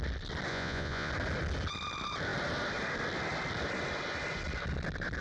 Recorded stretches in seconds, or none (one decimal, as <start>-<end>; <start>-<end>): 0.0-0.5; 1.1-5.2